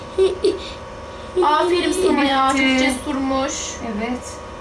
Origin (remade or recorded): remade